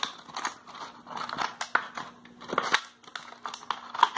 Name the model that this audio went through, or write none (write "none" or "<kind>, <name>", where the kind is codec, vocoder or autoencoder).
none